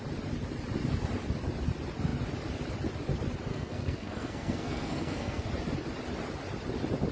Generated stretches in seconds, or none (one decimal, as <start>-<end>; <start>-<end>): 3.5-5.5